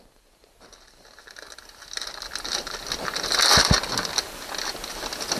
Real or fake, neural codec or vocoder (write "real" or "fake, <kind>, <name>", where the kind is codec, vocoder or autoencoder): real